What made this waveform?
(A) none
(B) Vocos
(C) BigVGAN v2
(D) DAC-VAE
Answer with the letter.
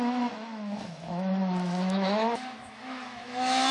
D